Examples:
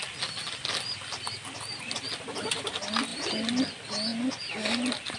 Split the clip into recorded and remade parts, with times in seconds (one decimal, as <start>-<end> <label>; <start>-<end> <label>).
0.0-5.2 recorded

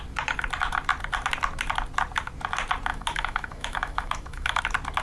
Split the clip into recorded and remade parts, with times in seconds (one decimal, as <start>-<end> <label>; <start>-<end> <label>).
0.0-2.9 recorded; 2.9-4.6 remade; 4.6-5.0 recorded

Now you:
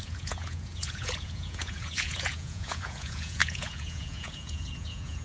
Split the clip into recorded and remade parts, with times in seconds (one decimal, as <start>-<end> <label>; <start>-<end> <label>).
0.0-5.2 remade